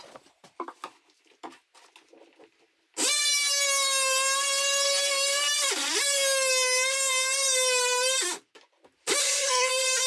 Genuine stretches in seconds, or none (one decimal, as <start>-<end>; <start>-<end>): 0.0-9.2; 9.7-10.1